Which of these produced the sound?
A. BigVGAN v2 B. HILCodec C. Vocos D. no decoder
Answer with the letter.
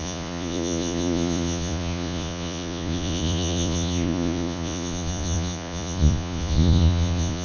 C